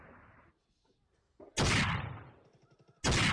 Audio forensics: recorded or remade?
recorded